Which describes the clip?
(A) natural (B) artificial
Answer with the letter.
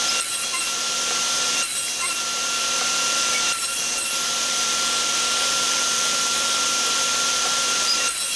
B